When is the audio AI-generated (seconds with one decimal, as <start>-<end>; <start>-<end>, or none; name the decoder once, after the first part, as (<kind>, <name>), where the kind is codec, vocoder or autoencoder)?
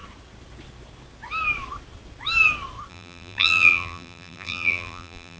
2.9-5.4 (vocoder, BigVGAN v2)